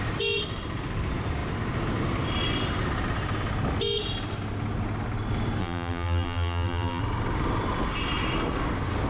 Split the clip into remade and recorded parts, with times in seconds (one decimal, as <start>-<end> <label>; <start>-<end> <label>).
0.0-5.6 recorded; 5.6-7.0 remade; 7.0-9.1 recorded